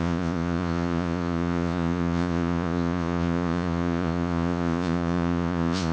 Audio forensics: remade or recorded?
remade